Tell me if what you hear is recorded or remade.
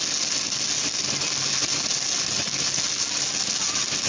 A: recorded